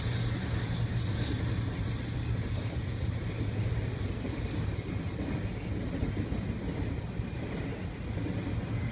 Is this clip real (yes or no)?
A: yes